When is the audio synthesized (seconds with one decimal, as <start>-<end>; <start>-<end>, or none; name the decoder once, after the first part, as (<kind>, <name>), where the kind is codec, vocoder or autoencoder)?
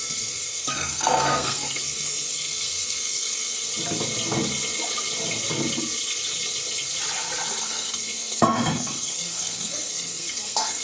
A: 0.0-3.7 (codec, SNAC); 7.6-10.8